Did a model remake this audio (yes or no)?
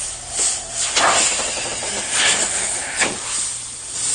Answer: no